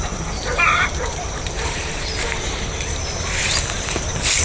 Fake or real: fake